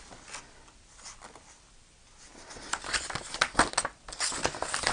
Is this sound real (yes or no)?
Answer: yes